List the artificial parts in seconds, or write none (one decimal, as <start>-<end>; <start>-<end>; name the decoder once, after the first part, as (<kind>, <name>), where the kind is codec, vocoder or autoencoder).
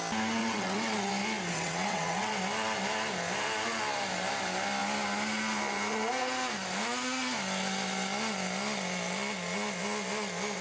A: 0.4-1.1 (vocoder, WaveNeXt); 1.5-2.3